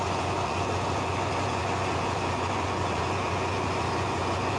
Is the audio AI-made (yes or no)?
yes